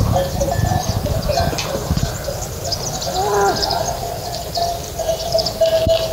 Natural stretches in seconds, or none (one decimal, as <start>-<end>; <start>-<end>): 0.0-6.1